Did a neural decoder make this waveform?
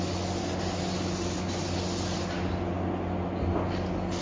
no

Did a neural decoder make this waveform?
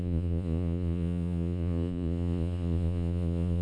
yes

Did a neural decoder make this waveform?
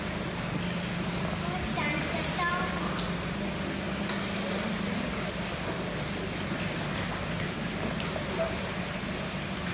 no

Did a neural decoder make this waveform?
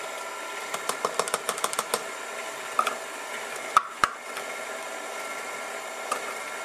yes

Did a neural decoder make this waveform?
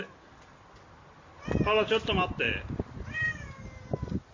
no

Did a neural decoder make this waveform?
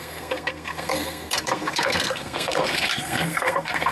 yes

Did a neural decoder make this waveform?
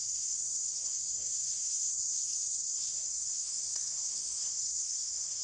yes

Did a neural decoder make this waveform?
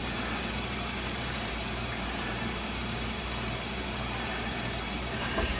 yes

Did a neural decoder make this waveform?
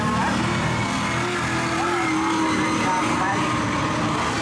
no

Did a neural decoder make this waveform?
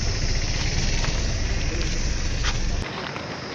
no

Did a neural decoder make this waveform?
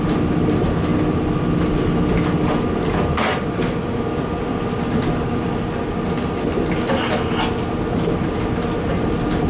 no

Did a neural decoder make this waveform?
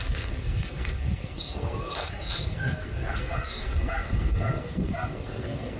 yes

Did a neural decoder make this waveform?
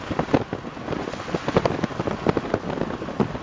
no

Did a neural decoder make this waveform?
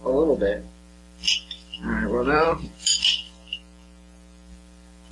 yes